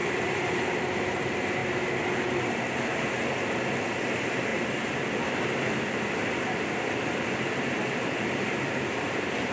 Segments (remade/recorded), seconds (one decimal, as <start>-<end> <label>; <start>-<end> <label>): 0.0-0.8 remade; 0.8-4.5 recorded; 4.5-9.5 remade